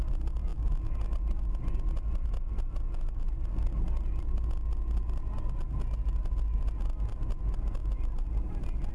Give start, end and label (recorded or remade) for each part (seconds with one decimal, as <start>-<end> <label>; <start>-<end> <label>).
0.0-8.9 recorded